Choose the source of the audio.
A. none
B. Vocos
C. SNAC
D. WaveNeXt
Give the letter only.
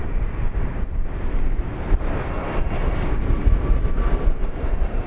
A